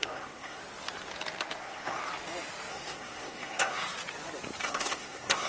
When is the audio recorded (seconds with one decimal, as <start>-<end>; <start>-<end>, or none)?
0.6-1.6; 2.0-2.7; 3.8-4.6